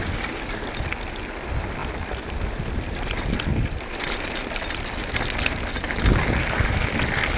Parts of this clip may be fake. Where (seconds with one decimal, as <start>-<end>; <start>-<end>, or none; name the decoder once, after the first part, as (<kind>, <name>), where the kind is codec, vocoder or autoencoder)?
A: none